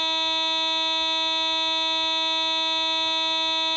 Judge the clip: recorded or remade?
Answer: recorded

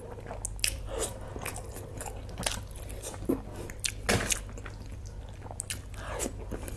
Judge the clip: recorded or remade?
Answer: recorded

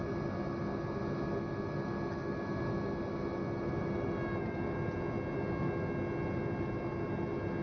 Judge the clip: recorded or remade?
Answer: recorded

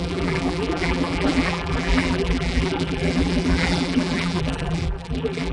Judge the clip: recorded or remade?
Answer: remade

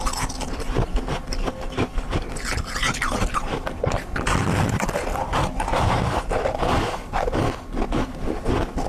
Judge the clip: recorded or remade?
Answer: recorded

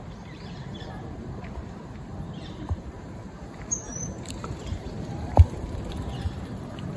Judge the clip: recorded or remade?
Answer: remade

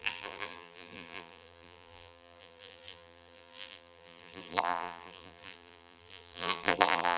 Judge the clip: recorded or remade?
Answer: remade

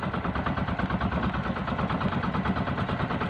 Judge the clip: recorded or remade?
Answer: recorded